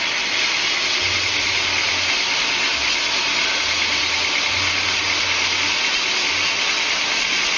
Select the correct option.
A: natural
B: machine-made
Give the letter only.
A